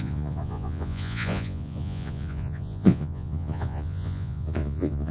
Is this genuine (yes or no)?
no